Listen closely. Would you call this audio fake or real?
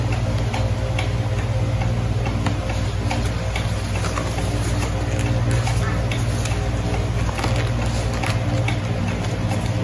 real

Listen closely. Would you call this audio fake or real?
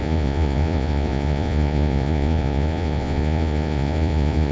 fake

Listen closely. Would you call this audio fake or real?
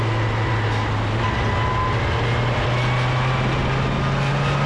real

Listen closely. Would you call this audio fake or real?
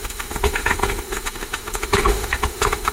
fake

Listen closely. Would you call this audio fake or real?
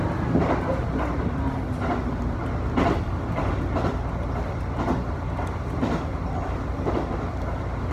real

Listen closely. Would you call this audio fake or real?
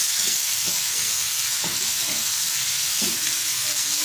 fake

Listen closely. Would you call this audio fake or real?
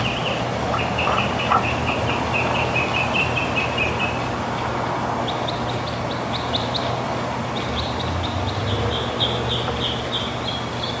real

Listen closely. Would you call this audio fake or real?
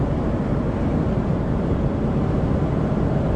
real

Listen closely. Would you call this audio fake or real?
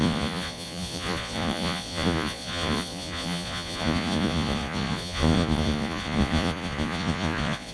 fake